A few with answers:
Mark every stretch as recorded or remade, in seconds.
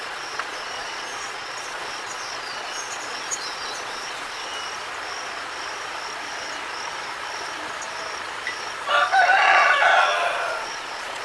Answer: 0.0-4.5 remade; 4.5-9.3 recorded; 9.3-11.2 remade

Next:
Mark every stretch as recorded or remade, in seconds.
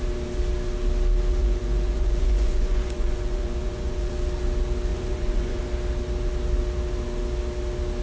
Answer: 0.0-1.4 recorded; 1.4-4.1 remade; 4.1-4.9 recorded; 4.9-5.6 remade; 5.6-8.0 recorded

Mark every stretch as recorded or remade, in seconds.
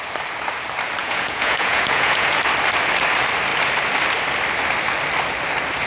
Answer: 0.0-1.0 recorded; 1.0-2.4 remade; 2.4-5.9 recorded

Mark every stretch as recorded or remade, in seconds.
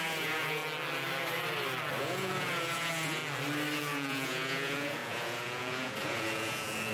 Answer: 0.0-0.6 remade; 0.6-2.0 recorded; 2.0-3.2 remade; 3.2-3.8 recorded; 3.8-6.9 remade